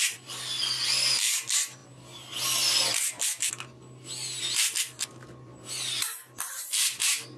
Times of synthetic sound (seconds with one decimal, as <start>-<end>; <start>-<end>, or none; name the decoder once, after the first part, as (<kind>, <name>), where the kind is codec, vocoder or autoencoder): none